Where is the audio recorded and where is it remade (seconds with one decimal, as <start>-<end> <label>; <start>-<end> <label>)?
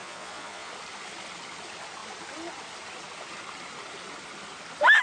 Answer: 0.0-0.7 remade; 0.7-5.0 recorded